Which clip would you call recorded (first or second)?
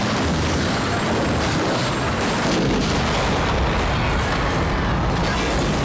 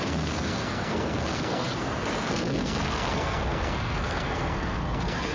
first